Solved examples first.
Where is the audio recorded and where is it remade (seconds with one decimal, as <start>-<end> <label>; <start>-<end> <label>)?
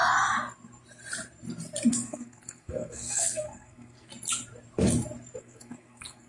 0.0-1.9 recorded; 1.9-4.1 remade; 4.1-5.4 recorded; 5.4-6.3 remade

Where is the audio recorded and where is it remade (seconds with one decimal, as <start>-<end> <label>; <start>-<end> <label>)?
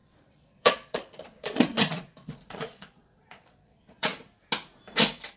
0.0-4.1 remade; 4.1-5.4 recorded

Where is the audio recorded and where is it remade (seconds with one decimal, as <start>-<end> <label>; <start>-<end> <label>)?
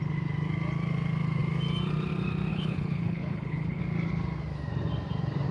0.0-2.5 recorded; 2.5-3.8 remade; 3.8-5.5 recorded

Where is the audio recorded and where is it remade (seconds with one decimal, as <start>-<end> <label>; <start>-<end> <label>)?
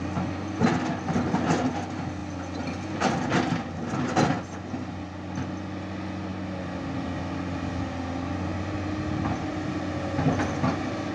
0.0-11.1 recorded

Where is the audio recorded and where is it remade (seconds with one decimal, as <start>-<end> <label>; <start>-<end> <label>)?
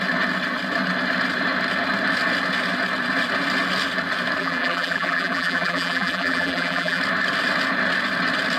0.0-4.4 recorded; 4.4-7.0 remade; 7.0-8.6 recorded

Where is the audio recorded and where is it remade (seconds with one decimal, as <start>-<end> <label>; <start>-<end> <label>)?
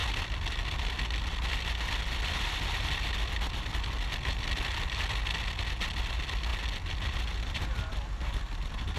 0.0-9.0 recorded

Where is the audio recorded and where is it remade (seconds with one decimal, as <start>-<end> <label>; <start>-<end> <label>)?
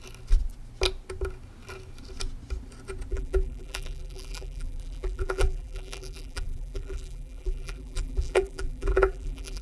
0.0-3.1 recorded; 3.1-9.6 remade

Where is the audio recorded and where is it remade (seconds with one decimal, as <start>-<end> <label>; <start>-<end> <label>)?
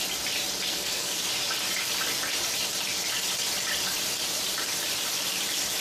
0.0-0.7 recorded; 0.7-1.2 remade; 1.2-5.8 recorded